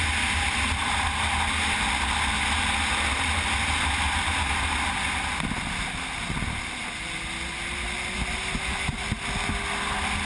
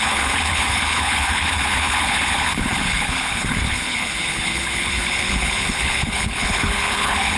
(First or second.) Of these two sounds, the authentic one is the first